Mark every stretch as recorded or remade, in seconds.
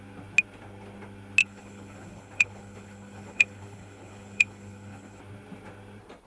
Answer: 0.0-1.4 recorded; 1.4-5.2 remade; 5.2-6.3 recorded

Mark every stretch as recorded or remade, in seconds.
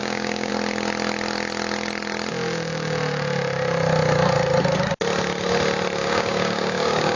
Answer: 0.0-0.5 remade; 0.5-6.0 recorded; 6.0-7.2 remade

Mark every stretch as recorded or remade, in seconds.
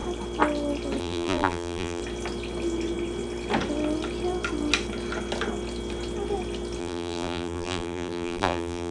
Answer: 0.0-1.0 recorded; 1.0-2.0 remade; 2.0-6.8 recorded; 6.8-8.9 remade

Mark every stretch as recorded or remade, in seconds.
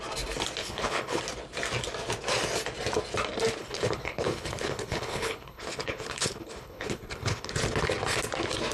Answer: 0.0-0.6 recorded; 0.6-1.2 remade; 1.2-3.6 recorded; 3.6-7.5 remade; 7.5-8.7 recorded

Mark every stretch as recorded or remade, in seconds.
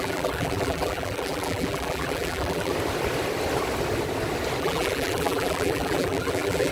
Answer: 0.0-2.7 remade; 2.7-4.6 recorded; 4.6-6.7 remade